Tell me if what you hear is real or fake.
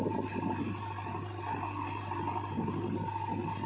real